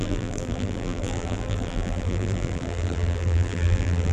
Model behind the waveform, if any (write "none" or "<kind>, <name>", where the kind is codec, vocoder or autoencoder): vocoder, BigVGAN v2